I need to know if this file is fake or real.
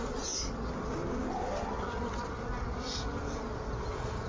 real